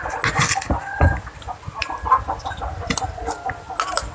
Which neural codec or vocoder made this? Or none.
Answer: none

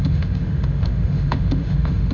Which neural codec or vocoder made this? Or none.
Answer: autoencoder, DAC-VAE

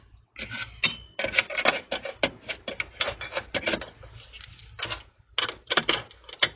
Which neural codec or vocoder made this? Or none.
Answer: none